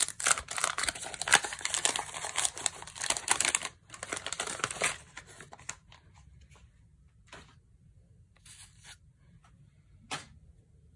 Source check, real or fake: real